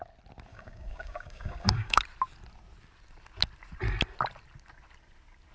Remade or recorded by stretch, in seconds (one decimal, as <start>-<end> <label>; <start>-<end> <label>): 0.0-0.5 recorded; 0.5-2.0 remade; 2.0-5.5 recorded